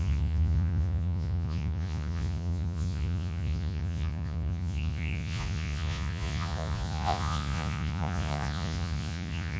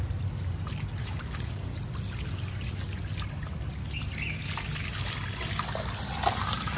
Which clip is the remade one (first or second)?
first